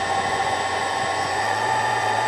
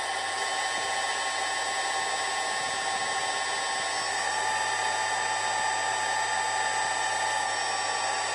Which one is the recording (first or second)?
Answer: second